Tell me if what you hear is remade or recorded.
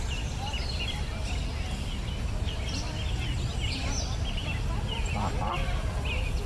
recorded